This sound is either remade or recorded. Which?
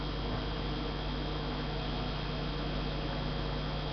recorded